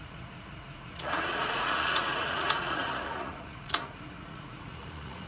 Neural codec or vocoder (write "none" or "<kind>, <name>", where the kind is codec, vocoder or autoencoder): vocoder, Vocos